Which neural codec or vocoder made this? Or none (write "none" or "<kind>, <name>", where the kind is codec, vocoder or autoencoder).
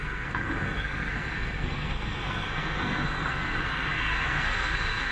codec, SNAC